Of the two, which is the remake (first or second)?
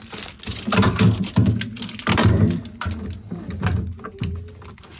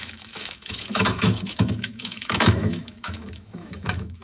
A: second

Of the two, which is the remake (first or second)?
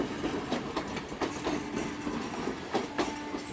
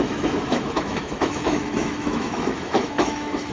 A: second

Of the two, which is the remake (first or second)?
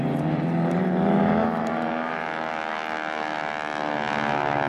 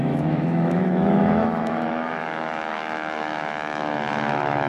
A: second